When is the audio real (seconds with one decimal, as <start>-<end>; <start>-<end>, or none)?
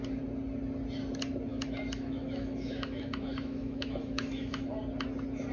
0.0-1.5; 4.8-5.5